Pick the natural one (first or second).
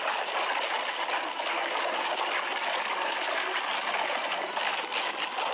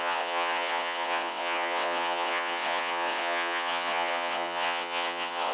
first